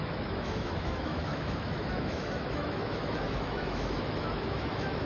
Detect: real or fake fake